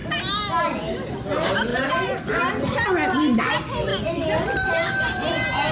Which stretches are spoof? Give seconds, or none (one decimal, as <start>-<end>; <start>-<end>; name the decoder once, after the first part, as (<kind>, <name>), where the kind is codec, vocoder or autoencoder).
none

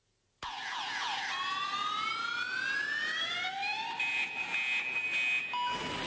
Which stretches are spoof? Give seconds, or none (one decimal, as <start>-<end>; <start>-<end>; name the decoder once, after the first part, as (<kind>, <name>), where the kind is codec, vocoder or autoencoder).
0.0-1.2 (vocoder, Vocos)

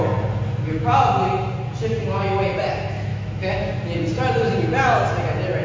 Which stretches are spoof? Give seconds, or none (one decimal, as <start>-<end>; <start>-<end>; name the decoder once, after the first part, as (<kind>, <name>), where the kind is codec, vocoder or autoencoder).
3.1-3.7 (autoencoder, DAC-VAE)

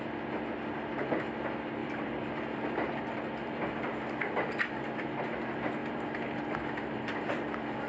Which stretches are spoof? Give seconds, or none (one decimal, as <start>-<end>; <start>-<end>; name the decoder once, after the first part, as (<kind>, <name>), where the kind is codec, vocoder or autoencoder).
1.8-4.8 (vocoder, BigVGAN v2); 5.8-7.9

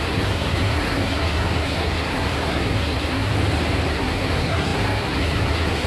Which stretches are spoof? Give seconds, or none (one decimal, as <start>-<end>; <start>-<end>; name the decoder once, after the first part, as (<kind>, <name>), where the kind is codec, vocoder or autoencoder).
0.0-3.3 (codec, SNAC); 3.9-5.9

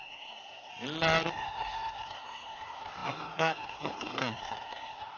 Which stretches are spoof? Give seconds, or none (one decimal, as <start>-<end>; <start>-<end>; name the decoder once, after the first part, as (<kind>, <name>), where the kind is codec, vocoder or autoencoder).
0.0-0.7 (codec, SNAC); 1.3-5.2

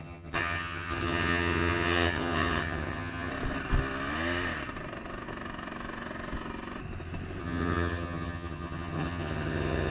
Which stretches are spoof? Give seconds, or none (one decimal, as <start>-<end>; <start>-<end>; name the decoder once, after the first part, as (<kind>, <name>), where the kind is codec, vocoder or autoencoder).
0.0-3.3 (vocoder, HiFi-GAN); 7.4-9.9

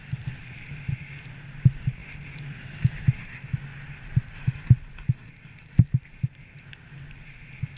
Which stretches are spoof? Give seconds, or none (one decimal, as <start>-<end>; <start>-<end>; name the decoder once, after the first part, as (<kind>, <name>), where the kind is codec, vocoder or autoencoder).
none